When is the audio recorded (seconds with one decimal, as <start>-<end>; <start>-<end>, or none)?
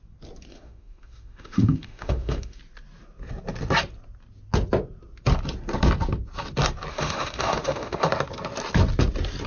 0.0-0.5; 2.6-6.9; 8.1-9.5